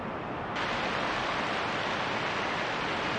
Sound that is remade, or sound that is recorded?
recorded